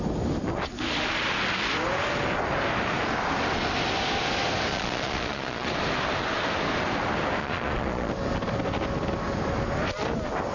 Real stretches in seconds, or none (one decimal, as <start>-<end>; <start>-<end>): 0.0-4.7; 5.7-7.4; 8.1-10.5